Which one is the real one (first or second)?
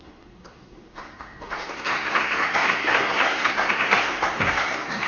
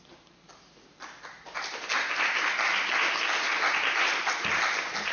second